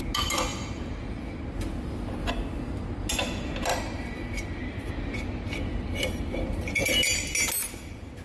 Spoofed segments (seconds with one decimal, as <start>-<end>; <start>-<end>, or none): 0.5-1.4; 3.7-4.9; 5.9-6.7